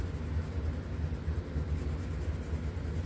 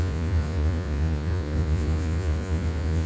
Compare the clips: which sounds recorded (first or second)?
first